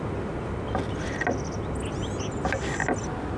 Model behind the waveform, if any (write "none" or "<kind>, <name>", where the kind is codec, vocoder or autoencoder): none